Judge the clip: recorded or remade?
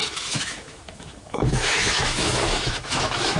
remade